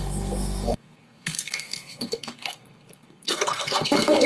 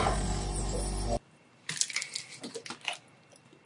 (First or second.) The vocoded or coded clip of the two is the first